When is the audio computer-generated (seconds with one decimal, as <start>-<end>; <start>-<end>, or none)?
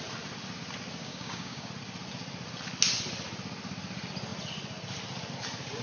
1.0-1.7